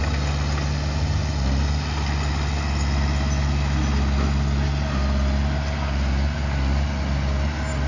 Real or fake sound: real